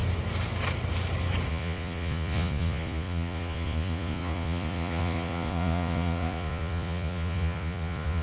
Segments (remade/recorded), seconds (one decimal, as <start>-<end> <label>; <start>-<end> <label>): 0.0-1.5 recorded; 1.5-8.2 remade